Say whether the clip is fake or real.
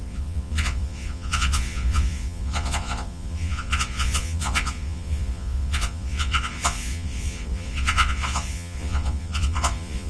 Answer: fake